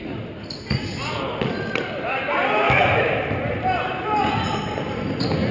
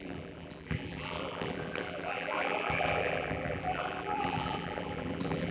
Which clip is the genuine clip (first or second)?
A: first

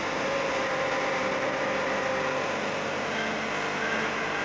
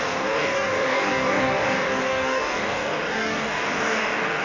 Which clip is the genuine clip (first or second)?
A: first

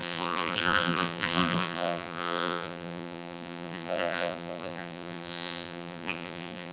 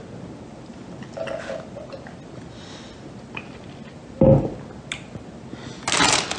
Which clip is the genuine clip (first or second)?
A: second